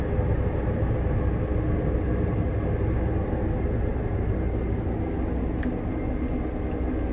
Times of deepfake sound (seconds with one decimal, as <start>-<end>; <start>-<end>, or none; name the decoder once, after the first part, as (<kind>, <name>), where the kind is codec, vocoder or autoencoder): none